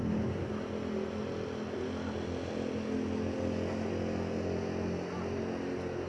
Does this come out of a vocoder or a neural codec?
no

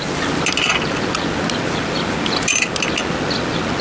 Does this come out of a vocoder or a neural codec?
no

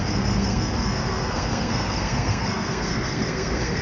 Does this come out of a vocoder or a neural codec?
yes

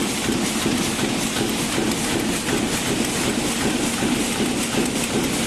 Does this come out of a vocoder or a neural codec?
no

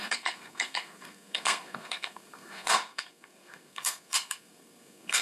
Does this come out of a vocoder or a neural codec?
yes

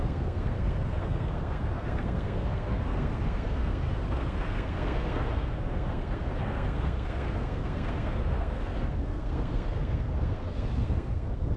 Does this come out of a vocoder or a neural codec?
yes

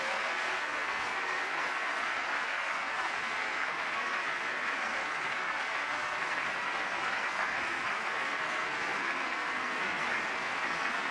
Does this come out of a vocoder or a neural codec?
yes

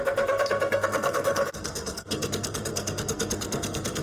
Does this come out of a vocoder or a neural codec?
yes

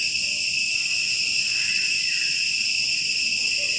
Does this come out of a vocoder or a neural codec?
no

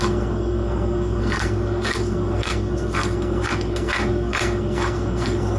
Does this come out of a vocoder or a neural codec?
yes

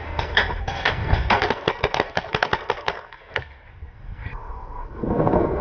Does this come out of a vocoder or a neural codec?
yes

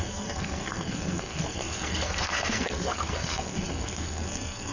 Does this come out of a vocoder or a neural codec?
yes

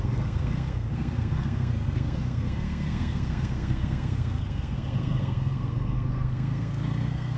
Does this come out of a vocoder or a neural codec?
yes